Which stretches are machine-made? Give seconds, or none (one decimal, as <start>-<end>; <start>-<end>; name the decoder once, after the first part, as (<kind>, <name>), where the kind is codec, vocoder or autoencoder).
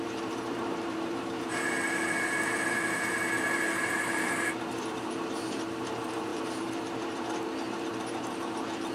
0.0-8.9 (vocoder, BigVGAN v2)